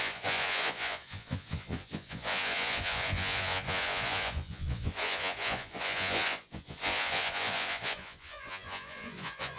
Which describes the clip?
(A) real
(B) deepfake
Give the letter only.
B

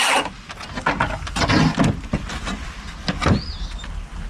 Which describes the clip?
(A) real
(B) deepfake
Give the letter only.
A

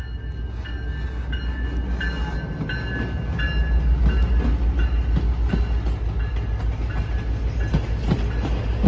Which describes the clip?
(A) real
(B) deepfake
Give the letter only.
A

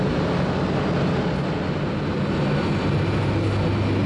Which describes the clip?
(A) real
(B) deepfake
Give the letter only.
A